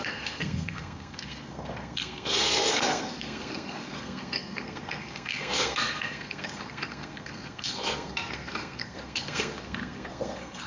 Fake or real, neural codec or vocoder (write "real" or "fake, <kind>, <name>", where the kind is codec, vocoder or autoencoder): fake, codec, SNAC